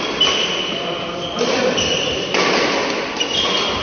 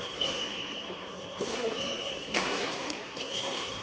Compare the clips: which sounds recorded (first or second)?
first